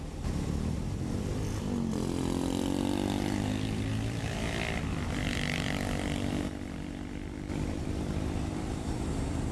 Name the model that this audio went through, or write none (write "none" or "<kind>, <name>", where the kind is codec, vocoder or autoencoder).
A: vocoder, BigVGAN v2